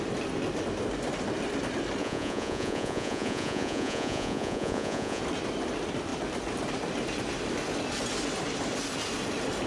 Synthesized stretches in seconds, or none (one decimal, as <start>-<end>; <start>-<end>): 2.0-5.2